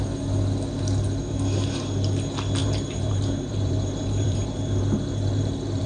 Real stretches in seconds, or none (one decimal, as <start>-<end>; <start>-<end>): 0.0-2.6

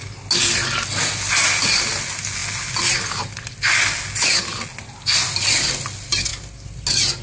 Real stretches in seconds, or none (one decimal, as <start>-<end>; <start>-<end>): 0.0-7.2